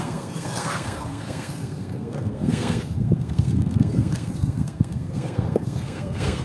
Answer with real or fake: fake